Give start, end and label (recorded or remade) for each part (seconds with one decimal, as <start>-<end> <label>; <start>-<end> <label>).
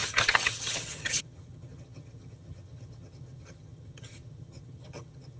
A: 0.0-5.4 remade